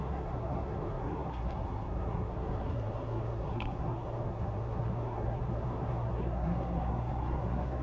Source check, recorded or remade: remade